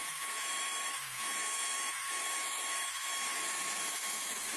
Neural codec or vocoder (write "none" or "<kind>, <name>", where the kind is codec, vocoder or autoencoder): autoencoder, DAC-VAE